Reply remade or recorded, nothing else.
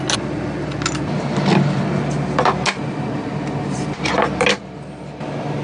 recorded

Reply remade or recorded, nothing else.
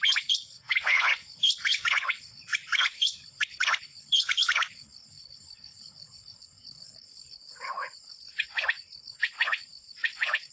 remade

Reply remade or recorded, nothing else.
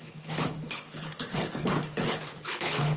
remade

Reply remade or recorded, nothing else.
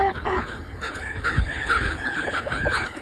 remade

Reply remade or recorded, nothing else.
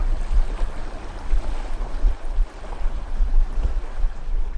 recorded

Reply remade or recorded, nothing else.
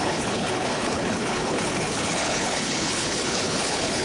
remade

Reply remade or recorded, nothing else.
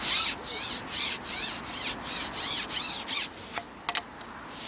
recorded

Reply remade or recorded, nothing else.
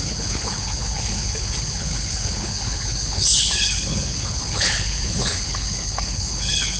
remade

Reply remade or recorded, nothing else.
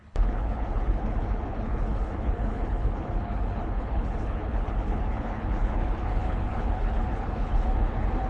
remade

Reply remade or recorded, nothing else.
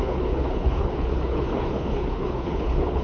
remade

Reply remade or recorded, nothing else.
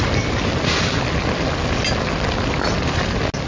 recorded